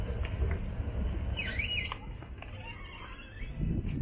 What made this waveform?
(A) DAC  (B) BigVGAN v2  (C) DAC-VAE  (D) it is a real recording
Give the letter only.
D